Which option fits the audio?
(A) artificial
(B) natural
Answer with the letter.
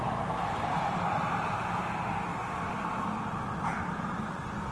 B